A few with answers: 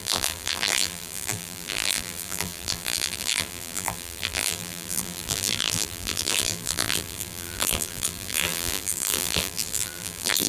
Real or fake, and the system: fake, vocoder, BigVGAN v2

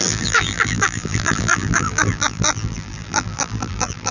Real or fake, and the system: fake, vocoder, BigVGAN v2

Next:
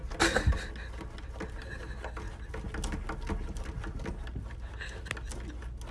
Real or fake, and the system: real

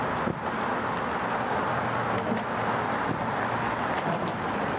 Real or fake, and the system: real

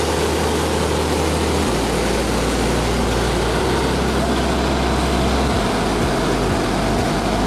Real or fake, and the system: real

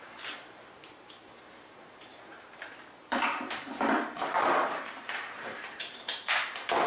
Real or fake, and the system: fake, vocoder, BigVGAN v2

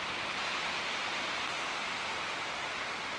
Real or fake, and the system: real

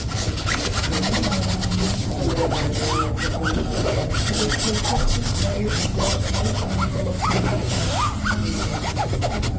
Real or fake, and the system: real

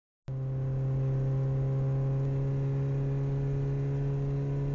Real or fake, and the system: real